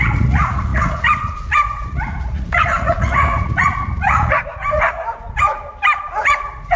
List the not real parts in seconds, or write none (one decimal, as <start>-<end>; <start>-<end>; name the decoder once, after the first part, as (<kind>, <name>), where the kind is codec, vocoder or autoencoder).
0.0-5.6 (vocoder, Vocos); 6.2-6.8